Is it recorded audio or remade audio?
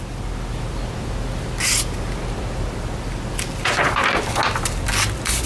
recorded